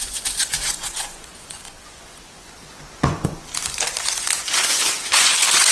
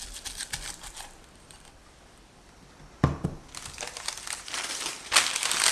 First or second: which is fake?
first